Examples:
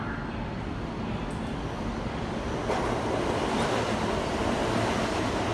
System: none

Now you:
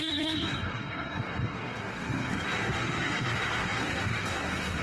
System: codec, SNAC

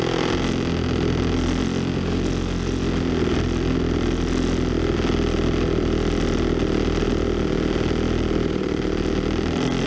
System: none